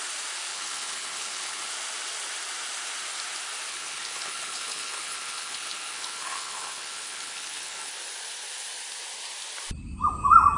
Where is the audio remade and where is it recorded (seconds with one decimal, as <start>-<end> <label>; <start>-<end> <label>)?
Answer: 0.0-0.5 recorded; 0.5-1.7 remade; 1.7-3.7 recorded; 3.7-7.9 remade; 7.9-10.6 recorded